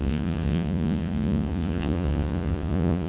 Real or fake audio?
fake